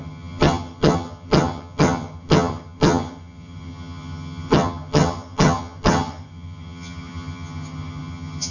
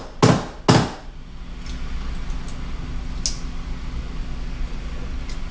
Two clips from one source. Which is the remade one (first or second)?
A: first